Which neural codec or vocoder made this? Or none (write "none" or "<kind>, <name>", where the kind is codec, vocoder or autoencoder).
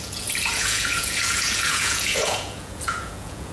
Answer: vocoder, Vocos